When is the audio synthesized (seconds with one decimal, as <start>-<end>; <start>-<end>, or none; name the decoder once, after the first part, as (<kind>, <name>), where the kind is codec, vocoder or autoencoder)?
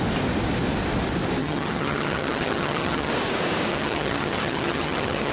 1.4-3.1 (vocoder, HiFi-GAN); 3.7-5.3